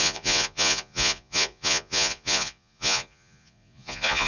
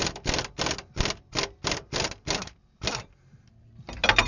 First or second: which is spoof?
first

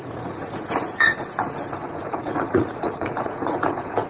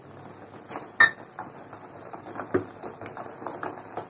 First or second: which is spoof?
first